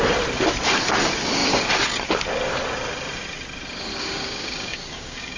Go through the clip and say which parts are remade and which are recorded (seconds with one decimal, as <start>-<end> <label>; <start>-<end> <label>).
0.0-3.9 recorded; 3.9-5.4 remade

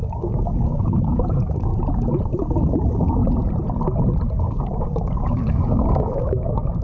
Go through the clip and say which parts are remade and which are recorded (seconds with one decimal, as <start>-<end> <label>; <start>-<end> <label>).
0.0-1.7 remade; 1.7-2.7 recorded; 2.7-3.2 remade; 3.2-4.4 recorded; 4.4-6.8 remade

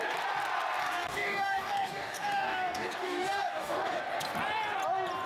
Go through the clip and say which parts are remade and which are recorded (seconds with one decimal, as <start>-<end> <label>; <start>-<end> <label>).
0.0-0.8 recorded; 0.8-4.0 remade; 4.0-5.3 recorded

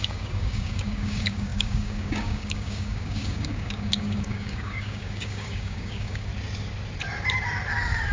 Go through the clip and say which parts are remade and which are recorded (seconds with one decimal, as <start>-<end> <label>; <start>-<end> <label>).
0.0-6.3 remade; 6.3-8.1 recorded

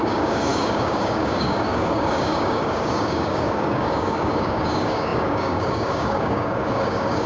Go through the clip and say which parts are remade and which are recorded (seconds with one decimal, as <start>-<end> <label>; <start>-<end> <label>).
0.0-7.3 remade

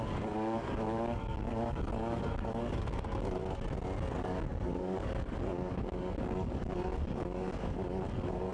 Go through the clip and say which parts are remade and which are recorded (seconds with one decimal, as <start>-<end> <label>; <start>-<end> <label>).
0.0-3.4 remade; 3.4-4.2 recorded; 4.2-8.5 remade

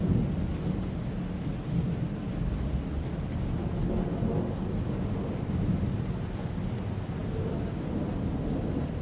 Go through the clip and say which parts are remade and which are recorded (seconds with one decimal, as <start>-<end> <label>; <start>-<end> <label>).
0.0-9.0 recorded